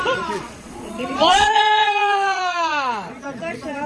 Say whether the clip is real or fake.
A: fake